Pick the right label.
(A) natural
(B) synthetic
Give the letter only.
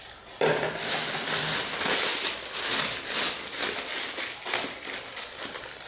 A